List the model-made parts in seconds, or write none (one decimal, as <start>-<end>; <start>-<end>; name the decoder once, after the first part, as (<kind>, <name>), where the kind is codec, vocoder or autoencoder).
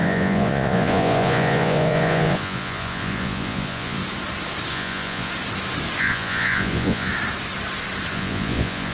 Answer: 0.0-4.0 (vocoder, Vocos); 4.7-5.3; 6.0-7.1; 8.1-8.9